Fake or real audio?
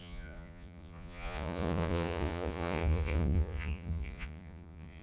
fake